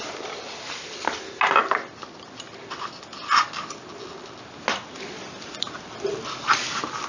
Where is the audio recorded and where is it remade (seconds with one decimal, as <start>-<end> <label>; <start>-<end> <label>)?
0.0-7.1 recorded